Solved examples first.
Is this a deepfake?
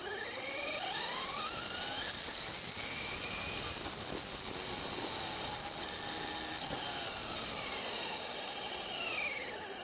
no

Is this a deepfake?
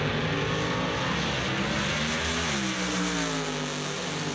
no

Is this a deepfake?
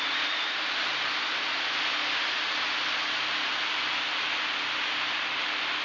no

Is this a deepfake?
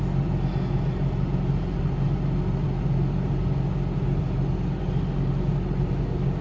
no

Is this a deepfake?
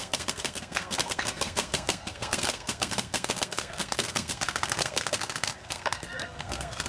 yes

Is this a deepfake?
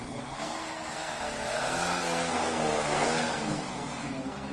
yes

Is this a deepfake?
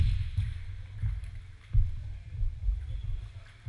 no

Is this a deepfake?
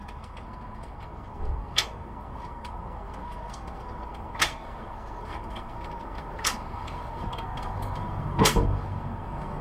yes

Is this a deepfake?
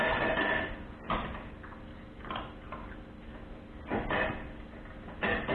no